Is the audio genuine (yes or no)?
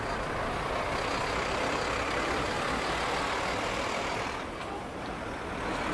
yes